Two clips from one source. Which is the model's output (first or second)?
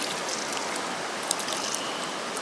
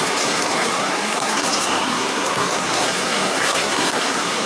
second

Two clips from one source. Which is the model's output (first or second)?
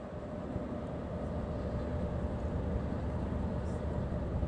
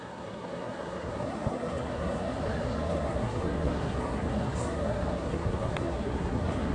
second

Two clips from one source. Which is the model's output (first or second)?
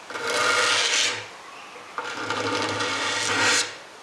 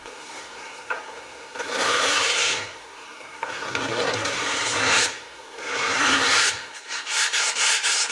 second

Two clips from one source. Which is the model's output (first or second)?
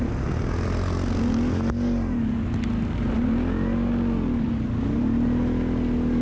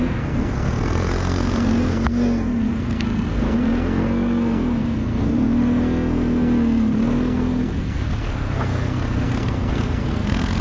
second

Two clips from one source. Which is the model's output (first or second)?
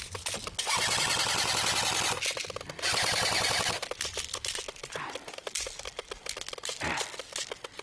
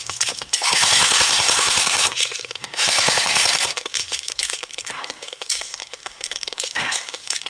second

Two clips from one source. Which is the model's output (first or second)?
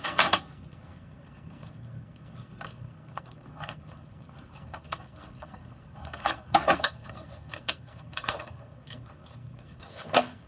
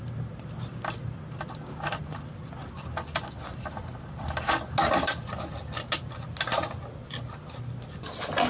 first